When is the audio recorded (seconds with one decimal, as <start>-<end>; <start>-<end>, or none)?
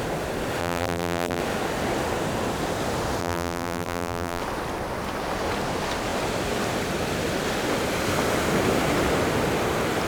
0.0-0.6; 1.4-3.2; 4.4-10.1